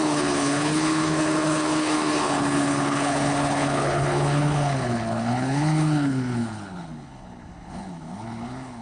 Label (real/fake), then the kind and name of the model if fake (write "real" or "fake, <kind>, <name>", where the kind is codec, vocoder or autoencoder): fake, codec, HILCodec